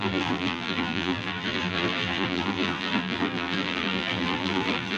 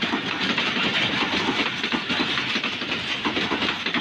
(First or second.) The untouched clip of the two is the second